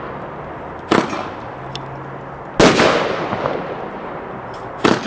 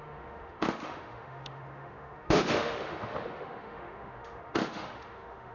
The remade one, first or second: second